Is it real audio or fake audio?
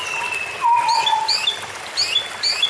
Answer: real